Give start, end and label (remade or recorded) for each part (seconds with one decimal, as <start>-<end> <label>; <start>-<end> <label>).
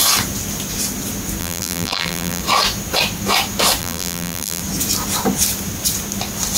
0.0-1.4 recorded; 1.4-2.4 remade; 2.4-3.8 recorded; 3.8-4.6 remade; 4.6-6.6 recorded